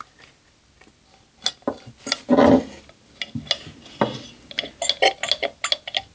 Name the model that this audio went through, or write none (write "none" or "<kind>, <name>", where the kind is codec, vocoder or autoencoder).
none